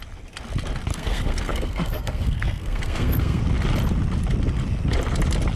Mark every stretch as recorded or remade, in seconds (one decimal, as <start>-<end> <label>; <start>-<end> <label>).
0.0-0.9 recorded; 0.9-3.4 remade; 3.4-5.6 recorded